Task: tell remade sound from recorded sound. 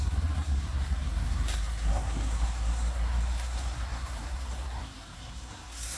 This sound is remade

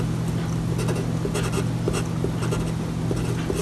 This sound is recorded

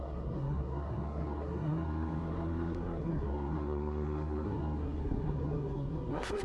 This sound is remade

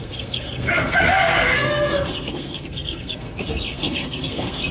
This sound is remade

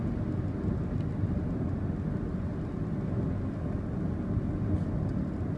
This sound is recorded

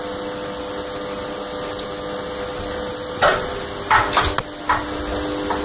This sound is recorded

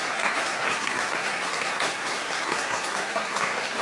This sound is remade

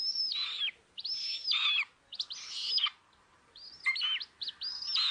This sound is recorded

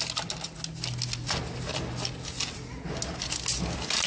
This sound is recorded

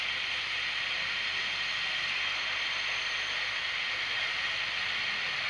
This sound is recorded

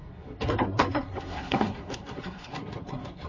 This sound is remade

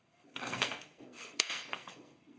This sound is remade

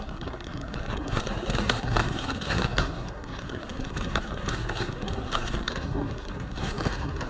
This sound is remade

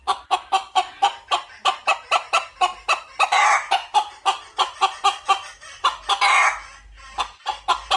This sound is recorded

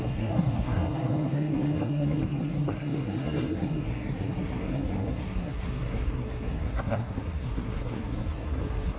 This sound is remade